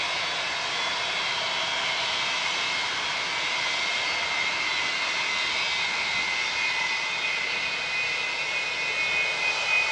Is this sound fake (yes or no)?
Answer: no